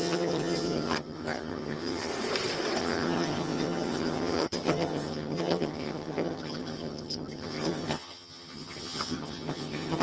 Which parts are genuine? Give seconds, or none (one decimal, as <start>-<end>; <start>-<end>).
2.1-2.8